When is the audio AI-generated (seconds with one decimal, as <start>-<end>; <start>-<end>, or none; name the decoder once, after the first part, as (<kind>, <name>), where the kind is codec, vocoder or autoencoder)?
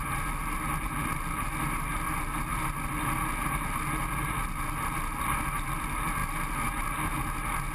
none